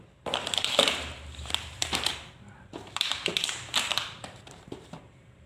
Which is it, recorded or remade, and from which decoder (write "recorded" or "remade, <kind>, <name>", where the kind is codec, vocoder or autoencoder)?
remade, vocoder, BigVGAN v2